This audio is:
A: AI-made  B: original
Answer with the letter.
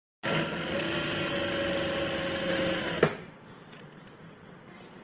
B